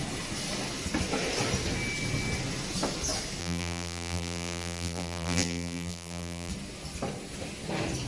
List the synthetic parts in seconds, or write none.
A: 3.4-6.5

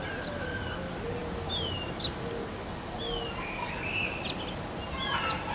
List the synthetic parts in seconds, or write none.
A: none

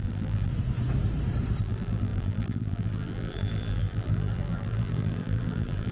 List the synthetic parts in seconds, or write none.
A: 0.0-0.5; 1.6-5.9